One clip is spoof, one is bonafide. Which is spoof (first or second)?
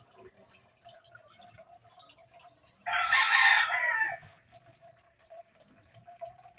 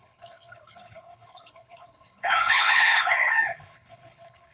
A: second